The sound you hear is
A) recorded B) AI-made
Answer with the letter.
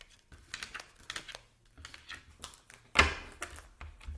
A